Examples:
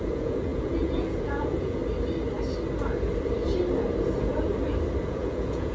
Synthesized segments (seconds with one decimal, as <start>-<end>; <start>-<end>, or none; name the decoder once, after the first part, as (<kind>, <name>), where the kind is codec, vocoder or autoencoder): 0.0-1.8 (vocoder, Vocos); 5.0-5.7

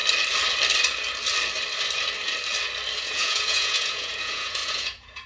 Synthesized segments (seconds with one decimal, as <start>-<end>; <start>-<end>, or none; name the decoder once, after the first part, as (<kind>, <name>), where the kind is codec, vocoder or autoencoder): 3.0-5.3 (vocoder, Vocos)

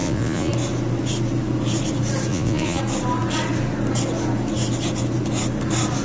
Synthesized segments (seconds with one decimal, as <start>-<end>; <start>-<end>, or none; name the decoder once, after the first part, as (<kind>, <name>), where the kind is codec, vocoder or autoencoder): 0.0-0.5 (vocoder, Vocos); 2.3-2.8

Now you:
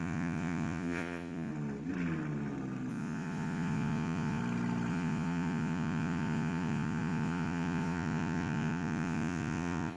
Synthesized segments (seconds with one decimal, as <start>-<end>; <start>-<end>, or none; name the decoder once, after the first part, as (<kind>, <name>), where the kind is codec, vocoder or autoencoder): 0.0-1.5 (vocoder, Vocos); 2.9-4.4; 4.9-10.0

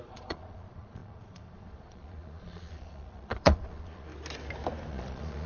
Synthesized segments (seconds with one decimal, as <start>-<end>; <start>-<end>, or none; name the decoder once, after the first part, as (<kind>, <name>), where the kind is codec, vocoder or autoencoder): 0.0-4.1 (vocoder, Vocos); 4.9-5.5

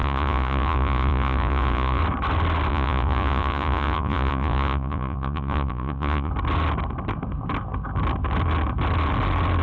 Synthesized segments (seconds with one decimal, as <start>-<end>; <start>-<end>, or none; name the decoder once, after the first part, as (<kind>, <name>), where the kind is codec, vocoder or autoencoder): 0.0-2.0 (vocoder, Vocos); 2.7-6.3